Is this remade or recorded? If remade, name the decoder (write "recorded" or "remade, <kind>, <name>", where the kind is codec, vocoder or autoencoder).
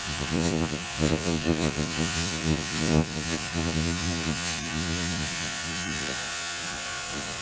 remade, vocoder, Vocos